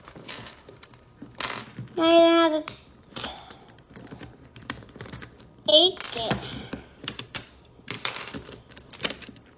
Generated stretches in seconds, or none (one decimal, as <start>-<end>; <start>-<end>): 0.0-1.2; 3.0-5.7; 6.7-9.6